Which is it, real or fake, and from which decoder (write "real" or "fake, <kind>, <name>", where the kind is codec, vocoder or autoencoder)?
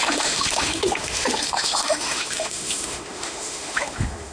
fake, autoencoder, DAC-VAE